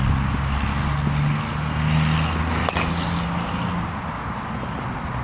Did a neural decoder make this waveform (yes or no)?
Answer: no